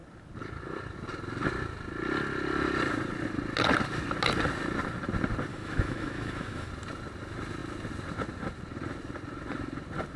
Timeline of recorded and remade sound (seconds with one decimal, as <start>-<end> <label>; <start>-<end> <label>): 0.0-5.5 recorded; 5.5-6.7 remade; 6.7-10.2 recorded